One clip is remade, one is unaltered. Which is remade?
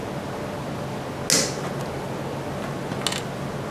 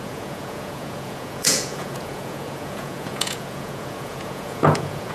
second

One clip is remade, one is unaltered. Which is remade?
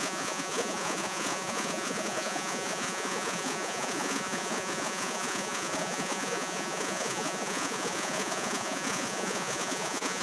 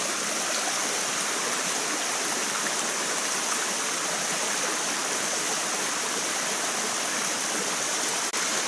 first